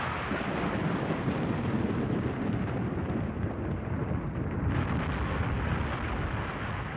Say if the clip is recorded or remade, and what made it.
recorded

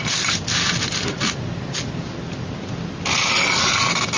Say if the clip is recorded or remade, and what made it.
recorded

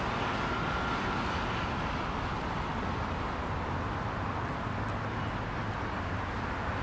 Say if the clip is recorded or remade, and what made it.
recorded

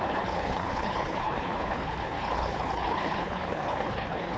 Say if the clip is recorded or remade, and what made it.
remade, codec, HILCodec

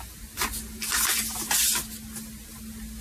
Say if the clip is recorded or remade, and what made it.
recorded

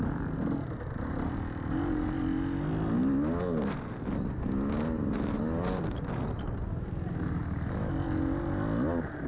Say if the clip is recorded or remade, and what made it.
recorded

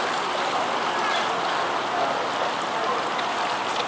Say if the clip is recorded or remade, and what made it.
recorded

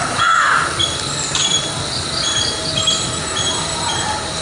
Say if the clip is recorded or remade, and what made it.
recorded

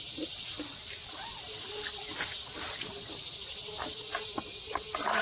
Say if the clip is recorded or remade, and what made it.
recorded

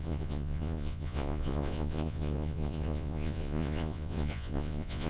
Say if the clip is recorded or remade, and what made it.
remade, vocoder, Vocos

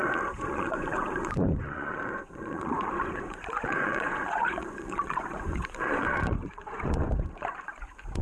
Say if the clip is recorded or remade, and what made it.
remade, vocoder, Vocos